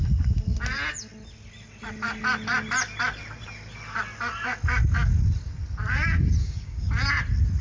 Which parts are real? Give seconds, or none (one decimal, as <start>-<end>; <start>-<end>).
0.0-6.4; 6.9-7.6